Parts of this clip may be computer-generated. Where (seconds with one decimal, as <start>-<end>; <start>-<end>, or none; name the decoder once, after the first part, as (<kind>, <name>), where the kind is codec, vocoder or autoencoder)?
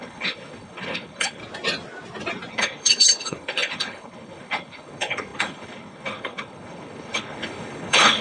0.0-1.4 (codec, HILCodec); 2.5-8.2